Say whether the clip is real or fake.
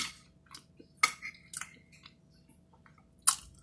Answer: real